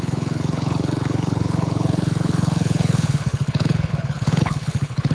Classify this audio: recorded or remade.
remade